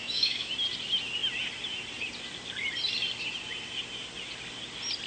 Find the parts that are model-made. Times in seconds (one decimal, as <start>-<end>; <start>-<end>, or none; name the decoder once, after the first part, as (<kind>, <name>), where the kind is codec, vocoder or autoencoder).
0.0-0.5 (autoencoder, DAC-VAE)